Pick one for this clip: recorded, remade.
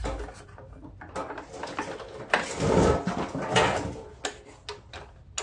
recorded